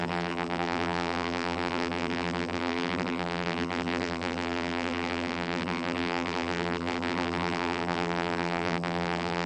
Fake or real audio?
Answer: fake